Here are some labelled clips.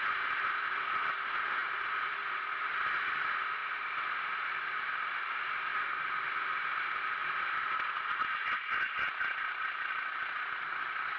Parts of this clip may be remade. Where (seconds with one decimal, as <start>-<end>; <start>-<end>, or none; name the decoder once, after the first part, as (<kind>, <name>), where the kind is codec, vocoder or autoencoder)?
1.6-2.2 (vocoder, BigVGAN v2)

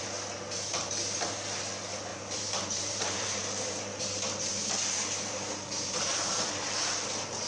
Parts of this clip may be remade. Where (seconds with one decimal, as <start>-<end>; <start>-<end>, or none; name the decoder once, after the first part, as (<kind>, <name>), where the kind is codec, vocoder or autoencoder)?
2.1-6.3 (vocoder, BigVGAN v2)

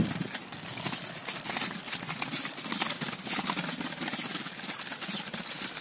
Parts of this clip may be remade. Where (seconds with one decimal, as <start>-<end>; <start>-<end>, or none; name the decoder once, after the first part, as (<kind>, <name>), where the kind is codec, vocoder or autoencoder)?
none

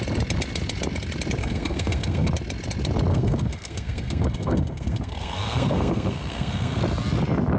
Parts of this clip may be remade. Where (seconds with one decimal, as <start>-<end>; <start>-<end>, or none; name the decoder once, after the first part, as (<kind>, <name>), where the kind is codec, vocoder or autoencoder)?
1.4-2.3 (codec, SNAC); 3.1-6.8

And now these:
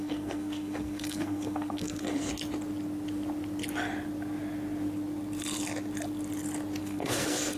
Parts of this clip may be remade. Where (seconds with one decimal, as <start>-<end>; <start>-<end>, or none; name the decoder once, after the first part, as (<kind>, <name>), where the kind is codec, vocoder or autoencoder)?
0.0-2.3 (codec, SNAC); 6.8-7.6

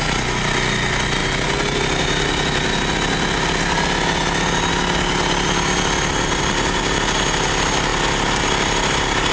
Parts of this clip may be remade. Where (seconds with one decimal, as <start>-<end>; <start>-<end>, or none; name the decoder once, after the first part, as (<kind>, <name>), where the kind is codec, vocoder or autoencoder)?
none